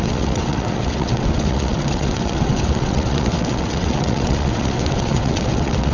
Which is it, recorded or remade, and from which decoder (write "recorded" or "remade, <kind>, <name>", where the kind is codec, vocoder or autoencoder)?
remade, vocoder, WaveNeXt